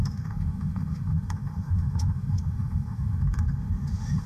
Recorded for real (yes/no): no